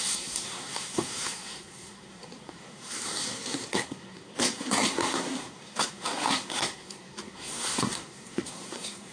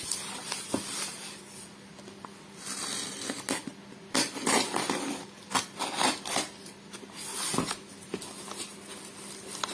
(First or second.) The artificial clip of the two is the first